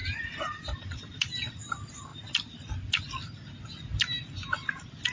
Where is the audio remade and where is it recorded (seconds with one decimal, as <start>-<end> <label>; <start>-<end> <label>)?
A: 0.0-1.6 remade; 1.6-5.1 recorded